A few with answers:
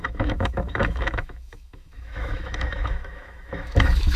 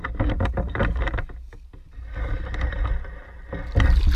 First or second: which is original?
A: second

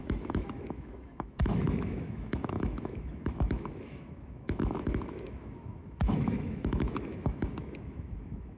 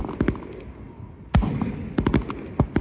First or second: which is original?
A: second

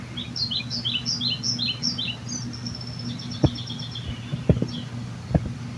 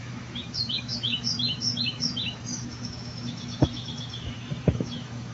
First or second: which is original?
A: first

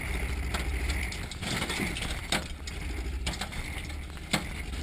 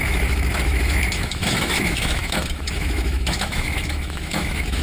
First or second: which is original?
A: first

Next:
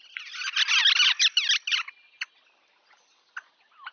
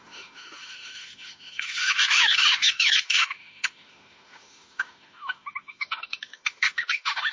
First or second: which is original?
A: first